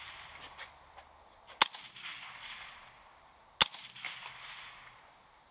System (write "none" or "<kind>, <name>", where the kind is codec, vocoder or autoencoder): none